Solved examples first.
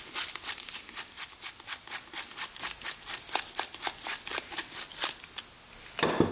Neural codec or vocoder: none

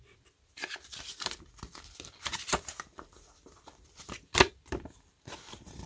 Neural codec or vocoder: vocoder, BigVGAN v2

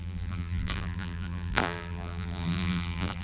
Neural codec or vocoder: vocoder, BigVGAN v2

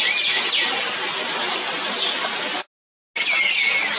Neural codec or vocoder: none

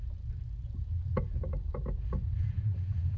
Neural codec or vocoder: vocoder, BigVGAN v2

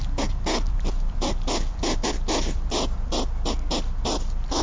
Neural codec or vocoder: vocoder, BigVGAN v2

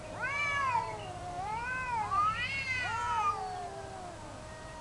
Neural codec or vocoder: vocoder, BigVGAN v2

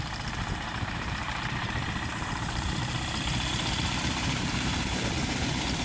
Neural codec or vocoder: vocoder, BigVGAN v2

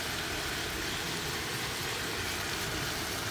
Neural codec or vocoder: vocoder, BigVGAN v2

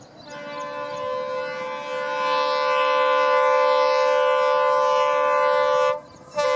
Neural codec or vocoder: none